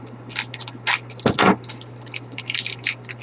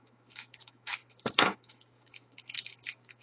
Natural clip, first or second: first